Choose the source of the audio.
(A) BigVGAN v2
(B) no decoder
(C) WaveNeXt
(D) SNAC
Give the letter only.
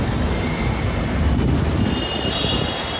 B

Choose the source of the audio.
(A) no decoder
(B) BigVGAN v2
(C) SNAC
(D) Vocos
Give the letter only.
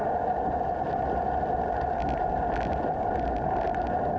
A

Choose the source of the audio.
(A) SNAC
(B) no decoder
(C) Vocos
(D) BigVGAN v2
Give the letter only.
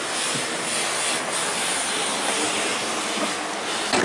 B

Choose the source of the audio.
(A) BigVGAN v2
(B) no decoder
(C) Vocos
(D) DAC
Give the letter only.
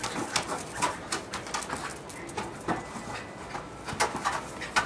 B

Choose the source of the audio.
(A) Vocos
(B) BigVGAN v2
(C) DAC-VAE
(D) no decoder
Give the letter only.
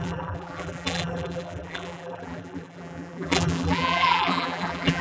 B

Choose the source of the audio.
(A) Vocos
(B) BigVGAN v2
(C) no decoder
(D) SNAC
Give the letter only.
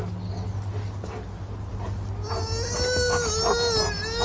C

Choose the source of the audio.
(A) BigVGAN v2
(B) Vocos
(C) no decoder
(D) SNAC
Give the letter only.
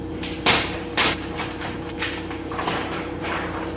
A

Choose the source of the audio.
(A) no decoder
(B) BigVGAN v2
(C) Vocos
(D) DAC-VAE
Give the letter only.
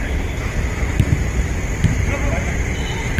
B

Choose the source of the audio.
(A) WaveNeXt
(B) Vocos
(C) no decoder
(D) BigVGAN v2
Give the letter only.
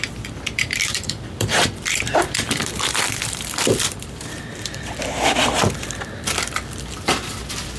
D